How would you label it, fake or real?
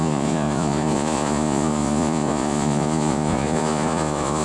fake